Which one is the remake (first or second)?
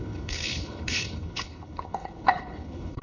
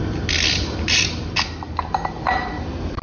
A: first